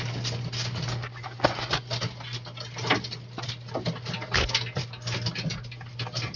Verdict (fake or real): real